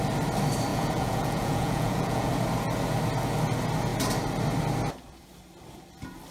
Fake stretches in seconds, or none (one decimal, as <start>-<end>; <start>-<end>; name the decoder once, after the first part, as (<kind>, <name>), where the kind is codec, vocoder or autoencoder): 0.7-2.3 (vocoder, Vocos)